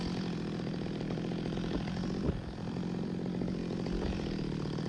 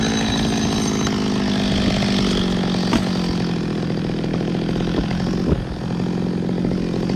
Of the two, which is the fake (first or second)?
first